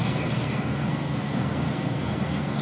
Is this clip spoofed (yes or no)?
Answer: yes